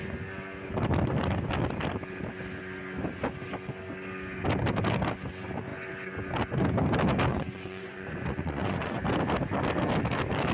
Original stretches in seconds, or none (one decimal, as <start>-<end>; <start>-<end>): 0.0-7.3; 9.0-10.5